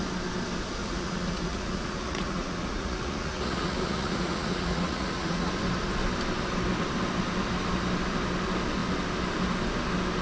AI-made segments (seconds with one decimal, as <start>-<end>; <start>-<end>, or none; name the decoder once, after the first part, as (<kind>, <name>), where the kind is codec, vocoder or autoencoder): 0.8-5.5 (vocoder, Vocos)